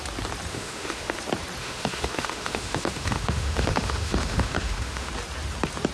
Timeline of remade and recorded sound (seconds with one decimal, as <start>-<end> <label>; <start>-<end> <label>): 0.0-0.5 recorded; 0.5-1.2 remade; 1.2-1.6 recorded; 1.6-5.1 remade; 5.1-5.9 recorded